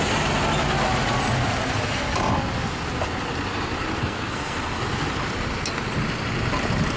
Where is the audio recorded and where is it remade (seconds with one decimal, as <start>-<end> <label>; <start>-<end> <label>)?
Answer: 0.0-4.0 recorded; 4.0-4.8 remade; 4.8-7.0 recorded